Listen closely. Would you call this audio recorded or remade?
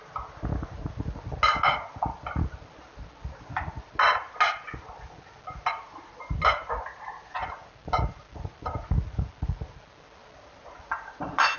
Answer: recorded